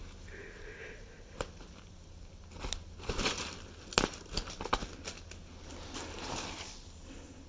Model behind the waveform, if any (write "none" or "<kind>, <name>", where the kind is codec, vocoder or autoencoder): none